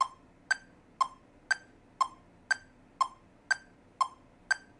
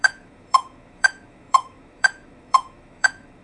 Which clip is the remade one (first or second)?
second